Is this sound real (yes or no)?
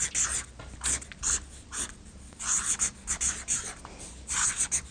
yes